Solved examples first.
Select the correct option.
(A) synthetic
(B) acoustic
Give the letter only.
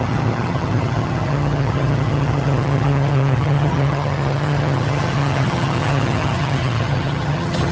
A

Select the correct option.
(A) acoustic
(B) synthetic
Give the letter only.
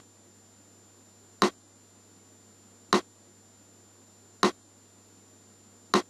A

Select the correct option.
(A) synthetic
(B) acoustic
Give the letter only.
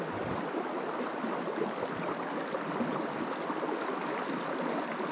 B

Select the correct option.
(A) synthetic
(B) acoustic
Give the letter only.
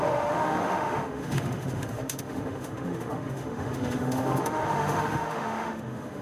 A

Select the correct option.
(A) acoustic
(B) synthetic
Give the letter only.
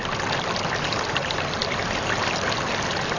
A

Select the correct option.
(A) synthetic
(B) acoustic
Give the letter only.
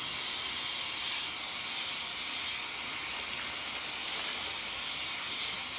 B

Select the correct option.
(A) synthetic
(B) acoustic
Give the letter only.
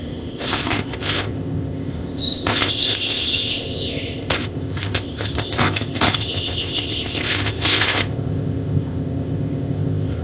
A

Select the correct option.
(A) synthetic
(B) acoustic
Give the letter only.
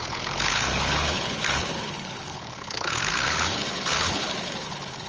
A